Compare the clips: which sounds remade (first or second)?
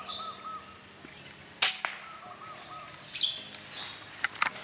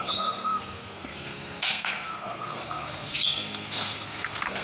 second